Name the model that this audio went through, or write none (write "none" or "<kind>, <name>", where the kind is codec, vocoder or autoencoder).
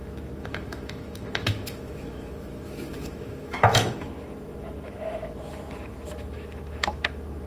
autoencoder, DAC-VAE